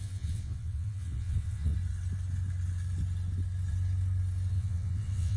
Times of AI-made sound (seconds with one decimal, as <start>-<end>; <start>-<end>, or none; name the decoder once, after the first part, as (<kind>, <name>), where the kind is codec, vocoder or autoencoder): 0.0-1.7 (vocoder, WaveNeXt); 4.5-5.4